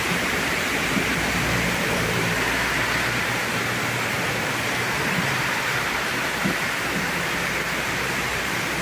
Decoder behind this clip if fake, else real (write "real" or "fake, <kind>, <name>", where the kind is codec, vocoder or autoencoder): fake, vocoder, BigVGAN v2